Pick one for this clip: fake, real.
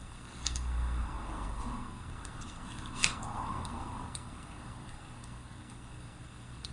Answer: fake